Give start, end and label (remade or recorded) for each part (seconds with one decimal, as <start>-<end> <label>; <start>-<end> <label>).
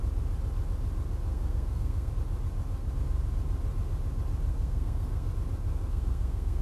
0.0-1.3 recorded; 1.3-2.1 remade; 2.1-4.5 recorded; 4.5-5.3 remade; 5.3-5.7 recorded; 5.7-6.6 remade